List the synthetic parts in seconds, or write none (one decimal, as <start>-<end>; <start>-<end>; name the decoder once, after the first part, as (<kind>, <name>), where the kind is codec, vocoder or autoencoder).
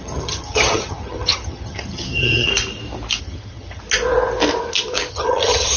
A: 0.0-2.5 (vocoder, HiFi-GAN); 3.2-3.8; 5.1-5.8